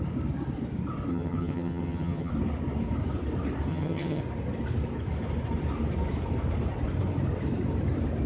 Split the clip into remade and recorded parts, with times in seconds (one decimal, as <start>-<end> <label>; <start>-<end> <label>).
0.0-1.1 recorded; 1.1-2.3 remade; 2.3-3.7 recorded; 3.7-4.2 remade; 4.2-8.3 recorded